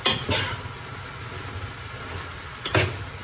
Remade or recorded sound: recorded